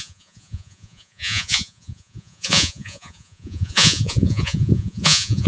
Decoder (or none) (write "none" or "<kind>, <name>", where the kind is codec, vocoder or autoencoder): vocoder, Vocos